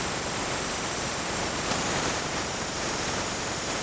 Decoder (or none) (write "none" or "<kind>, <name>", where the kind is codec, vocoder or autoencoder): vocoder, BigVGAN v2